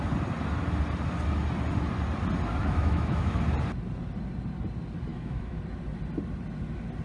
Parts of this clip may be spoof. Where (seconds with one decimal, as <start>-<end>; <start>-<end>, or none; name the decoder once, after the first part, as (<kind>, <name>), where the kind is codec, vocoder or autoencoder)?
2.6-3.4 (autoencoder, DAC-VAE); 5.1-5.6